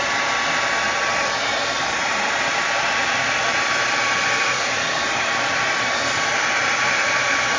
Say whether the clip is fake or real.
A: fake